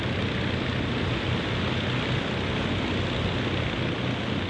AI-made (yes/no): no